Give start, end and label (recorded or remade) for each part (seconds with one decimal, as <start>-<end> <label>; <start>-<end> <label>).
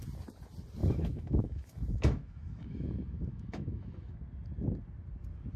0.0-0.8 recorded; 0.8-4.2 remade; 4.2-5.6 recorded